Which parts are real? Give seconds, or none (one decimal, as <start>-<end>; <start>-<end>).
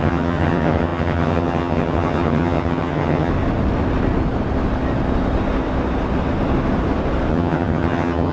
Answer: 3.3-7.3